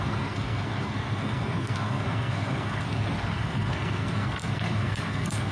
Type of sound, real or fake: fake